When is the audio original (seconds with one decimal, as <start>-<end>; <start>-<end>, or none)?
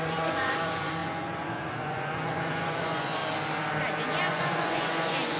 3.2-4.0